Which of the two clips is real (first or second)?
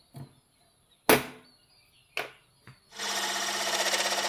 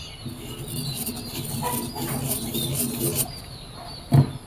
first